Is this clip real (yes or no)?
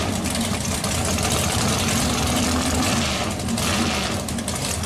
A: yes